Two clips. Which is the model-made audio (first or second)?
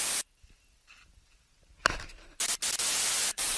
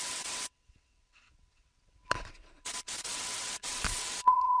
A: second